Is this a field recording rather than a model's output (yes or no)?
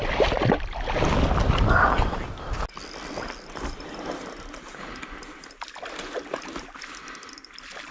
yes